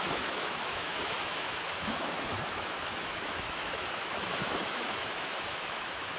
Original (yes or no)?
no